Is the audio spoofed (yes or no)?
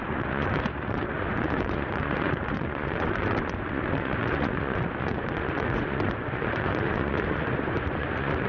yes